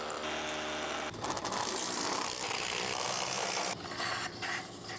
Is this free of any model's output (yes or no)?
yes